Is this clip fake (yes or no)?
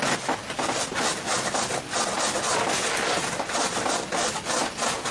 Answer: no